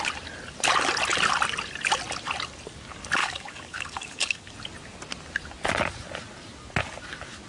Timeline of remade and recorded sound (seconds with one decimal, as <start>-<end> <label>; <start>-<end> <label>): 0.0-3.2 recorded; 3.2-4.5 remade; 4.5-7.5 recorded